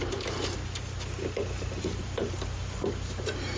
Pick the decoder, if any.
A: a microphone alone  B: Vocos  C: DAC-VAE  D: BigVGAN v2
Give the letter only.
A